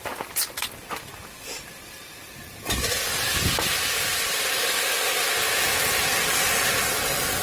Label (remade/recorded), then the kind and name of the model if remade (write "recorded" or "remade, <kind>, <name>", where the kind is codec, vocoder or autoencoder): recorded